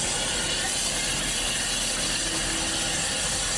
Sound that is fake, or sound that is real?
real